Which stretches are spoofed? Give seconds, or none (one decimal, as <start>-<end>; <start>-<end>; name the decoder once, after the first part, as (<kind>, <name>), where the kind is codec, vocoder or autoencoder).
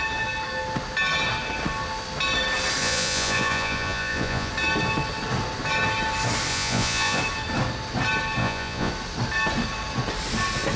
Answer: 2.8-4.5 (vocoder, Vocos); 6.5-7.2; 8.4-8.9